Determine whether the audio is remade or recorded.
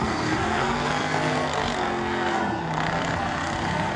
remade